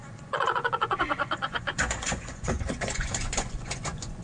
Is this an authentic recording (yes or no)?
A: no